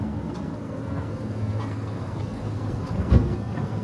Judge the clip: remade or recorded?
remade